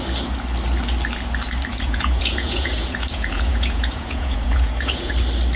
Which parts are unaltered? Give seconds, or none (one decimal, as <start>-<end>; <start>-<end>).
0.0-1.7; 5.1-5.6